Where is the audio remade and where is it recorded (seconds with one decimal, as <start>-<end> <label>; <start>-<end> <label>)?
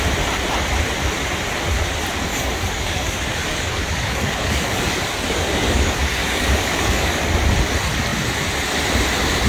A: 0.0-2.3 recorded; 2.3-7.2 remade; 7.2-9.5 recorded